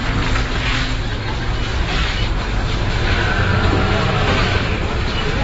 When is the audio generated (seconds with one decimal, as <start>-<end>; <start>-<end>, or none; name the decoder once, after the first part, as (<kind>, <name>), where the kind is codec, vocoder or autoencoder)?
1.7-4.9 (vocoder, BigVGAN v2)